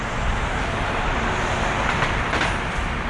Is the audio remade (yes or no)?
no